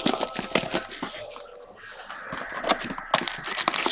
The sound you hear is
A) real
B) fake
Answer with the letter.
A